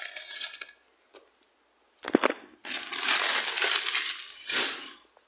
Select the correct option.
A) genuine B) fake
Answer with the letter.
A